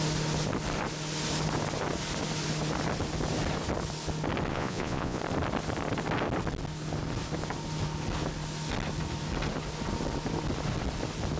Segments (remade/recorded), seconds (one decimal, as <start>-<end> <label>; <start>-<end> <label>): 0.0-4.5 recorded; 4.5-5.2 remade; 5.2-11.4 recorded